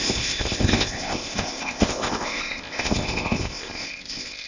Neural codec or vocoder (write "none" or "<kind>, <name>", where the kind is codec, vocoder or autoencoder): codec, ZipCodec